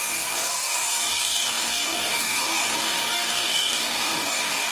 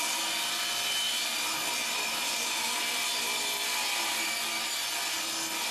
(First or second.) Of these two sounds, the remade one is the first